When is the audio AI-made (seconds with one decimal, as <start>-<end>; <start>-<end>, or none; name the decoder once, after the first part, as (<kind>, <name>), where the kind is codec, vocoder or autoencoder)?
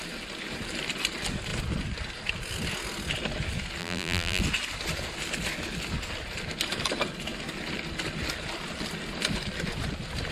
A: 3.8-4.4 (vocoder, BigVGAN v2)